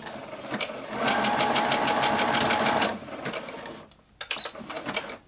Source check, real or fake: real